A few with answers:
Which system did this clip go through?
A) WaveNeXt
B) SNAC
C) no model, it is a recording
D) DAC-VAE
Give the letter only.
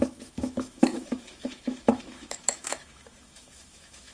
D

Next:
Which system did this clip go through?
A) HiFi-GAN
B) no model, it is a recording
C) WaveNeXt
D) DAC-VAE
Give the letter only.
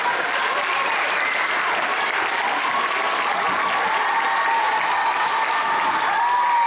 B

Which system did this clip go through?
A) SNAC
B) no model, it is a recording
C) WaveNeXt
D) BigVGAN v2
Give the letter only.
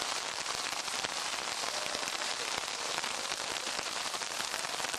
D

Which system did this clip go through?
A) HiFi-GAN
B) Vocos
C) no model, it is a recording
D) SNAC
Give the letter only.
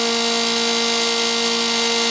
C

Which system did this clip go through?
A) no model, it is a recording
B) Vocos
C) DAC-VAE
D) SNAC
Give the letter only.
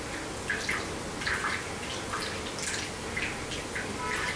A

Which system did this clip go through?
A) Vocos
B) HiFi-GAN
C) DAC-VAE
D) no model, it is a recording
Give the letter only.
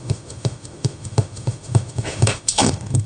C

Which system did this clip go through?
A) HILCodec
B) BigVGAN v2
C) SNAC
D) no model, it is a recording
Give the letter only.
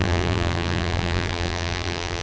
B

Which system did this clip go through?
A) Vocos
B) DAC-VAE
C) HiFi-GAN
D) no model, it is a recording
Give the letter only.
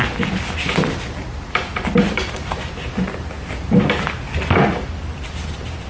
D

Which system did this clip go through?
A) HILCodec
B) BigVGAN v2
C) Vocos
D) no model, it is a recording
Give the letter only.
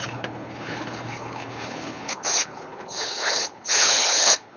A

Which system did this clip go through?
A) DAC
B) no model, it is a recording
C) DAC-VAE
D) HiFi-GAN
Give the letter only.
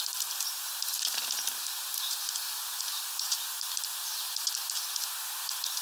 B